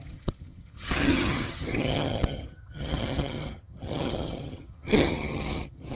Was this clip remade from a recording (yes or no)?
yes